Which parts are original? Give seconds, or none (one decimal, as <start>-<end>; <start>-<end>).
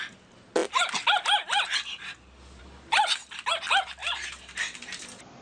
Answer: 0.0-5.4